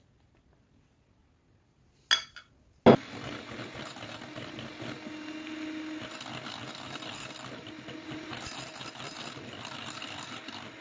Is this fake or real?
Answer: real